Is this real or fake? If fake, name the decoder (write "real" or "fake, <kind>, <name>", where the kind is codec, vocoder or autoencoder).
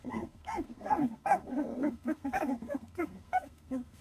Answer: fake, codec, SNAC